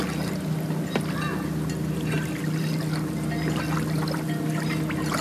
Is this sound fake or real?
real